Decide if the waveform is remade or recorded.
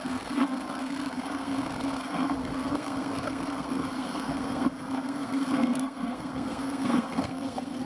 remade